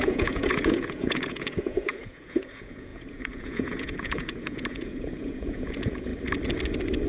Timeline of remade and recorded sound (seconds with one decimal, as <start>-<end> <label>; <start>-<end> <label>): 0.0-6.1 remade; 6.1-7.1 recorded